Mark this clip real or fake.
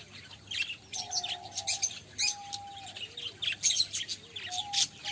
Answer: real